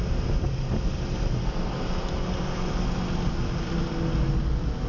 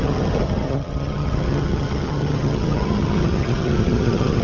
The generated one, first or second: second